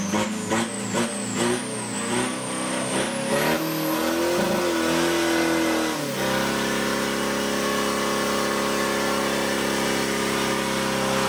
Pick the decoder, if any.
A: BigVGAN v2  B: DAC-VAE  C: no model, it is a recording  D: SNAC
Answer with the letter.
C